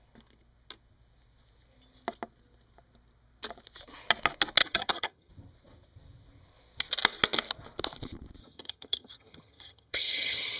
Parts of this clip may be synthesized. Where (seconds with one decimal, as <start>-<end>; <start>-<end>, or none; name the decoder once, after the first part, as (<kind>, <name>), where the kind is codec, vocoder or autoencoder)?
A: 4.6-5.3 (vocoder, HiFi-GAN); 8.4-10.6